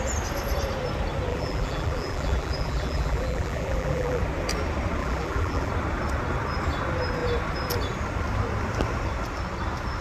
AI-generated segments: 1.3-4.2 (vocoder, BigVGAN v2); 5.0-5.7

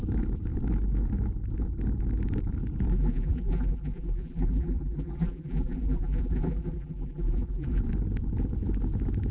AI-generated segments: 2.9-7.8 (vocoder, BigVGAN v2)

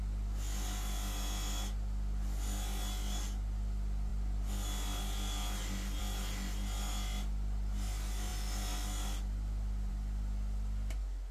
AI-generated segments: none

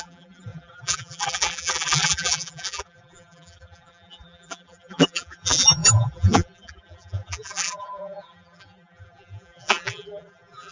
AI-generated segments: 0.0-10.7 (vocoder, BigVGAN v2)